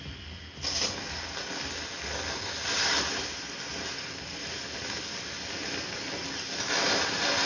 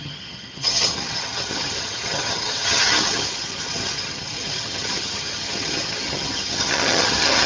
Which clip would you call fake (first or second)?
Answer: second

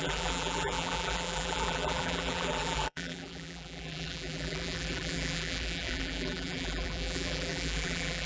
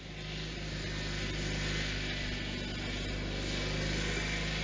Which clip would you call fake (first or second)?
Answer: first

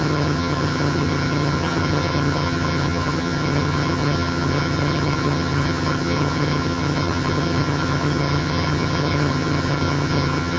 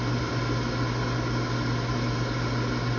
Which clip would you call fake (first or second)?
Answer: first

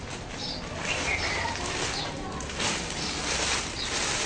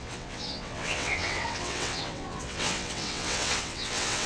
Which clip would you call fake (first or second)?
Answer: second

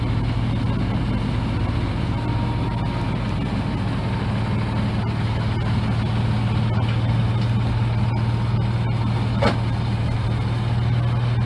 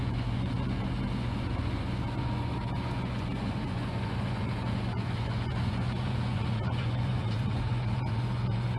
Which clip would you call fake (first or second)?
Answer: second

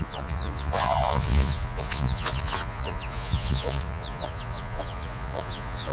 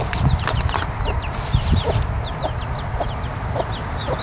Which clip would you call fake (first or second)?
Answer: first